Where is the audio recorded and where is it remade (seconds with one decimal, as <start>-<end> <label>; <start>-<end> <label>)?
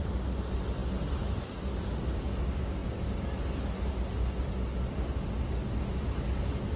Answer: 0.0-6.8 recorded